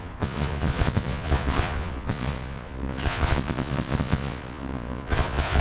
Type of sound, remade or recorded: remade